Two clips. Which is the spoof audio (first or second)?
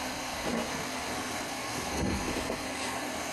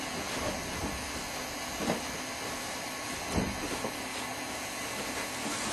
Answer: first